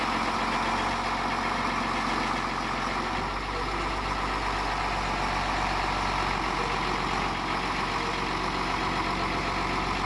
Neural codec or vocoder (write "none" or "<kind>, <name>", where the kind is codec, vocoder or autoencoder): none